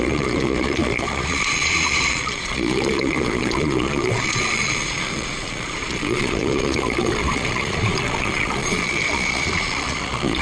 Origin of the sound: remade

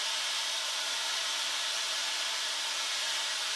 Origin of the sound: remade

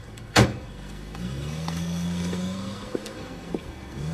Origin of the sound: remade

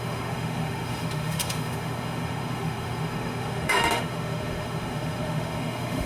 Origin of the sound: remade